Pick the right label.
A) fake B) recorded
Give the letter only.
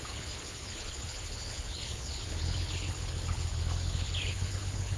A